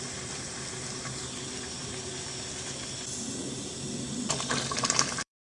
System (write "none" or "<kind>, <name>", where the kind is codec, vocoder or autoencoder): vocoder, BigVGAN v2